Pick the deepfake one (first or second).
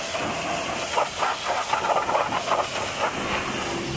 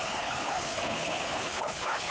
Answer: second